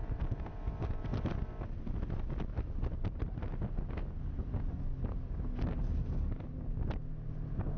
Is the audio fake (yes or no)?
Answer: no